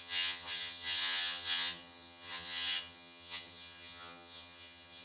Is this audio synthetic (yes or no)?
yes